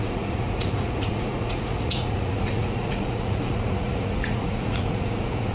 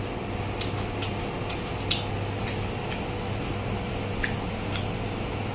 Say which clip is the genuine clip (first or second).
second